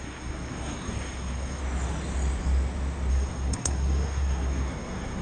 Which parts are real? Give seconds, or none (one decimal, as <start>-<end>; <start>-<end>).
1.6-3.1